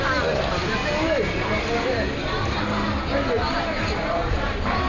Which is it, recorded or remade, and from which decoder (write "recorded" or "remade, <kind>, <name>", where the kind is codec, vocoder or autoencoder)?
recorded